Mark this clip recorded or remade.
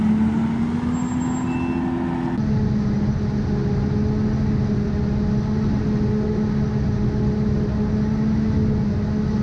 recorded